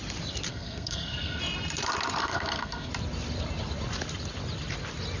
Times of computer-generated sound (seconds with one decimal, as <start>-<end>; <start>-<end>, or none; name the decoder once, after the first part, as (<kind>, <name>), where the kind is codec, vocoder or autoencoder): 0.5-1.4 (codec, SNAC); 2.2-2.9